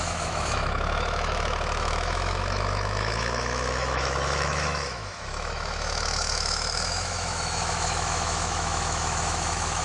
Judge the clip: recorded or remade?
remade